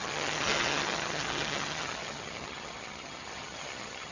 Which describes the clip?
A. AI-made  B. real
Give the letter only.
A